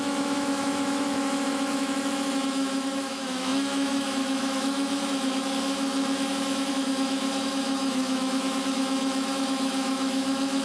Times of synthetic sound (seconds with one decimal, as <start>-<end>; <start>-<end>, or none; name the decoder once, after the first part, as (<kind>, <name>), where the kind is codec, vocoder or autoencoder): 0.0-10.6 (autoencoder, DAC-VAE)